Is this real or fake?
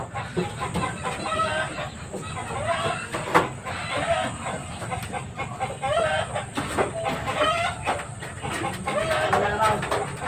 real